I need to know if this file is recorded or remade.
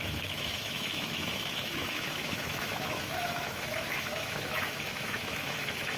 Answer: remade